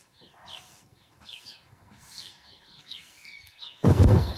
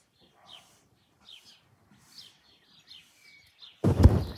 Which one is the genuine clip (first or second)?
second